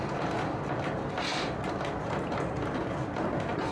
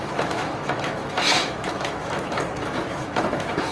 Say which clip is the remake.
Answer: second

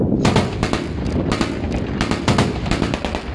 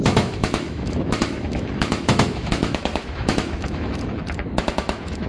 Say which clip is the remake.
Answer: second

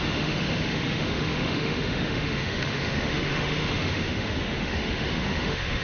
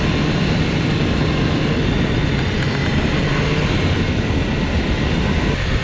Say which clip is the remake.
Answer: first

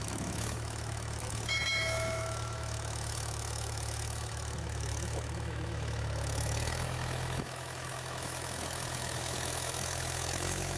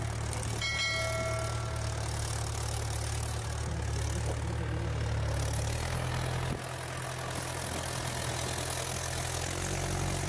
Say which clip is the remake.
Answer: first